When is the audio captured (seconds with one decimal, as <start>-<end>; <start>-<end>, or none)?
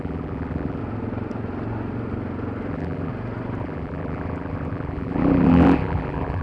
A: 0.8-2.7; 3.1-3.6